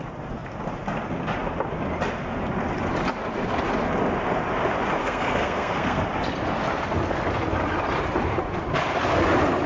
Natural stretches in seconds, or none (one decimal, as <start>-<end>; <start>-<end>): 0.0-5.0; 6.0-9.7